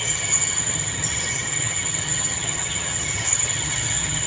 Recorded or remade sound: remade